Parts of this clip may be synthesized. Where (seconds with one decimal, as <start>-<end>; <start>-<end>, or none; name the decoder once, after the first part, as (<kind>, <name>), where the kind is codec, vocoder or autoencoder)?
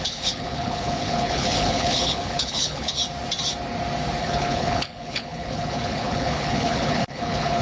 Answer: 0.0-3.0 (codec, HILCodec); 4.2-7.6